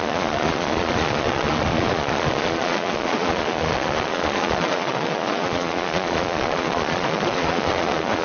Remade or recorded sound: remade